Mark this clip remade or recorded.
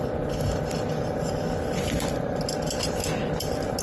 recorded